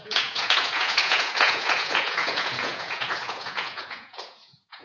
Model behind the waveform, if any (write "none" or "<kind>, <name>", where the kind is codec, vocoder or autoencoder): vocoder, Vocos